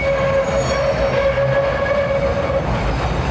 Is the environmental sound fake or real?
real